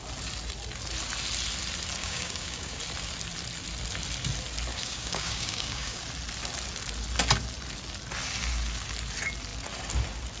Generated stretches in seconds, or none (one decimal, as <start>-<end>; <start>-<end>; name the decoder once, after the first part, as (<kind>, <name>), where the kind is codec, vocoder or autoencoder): 2.0-2.8 (codec, DAC); 4.7-6.0